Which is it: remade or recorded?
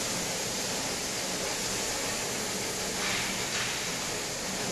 recorded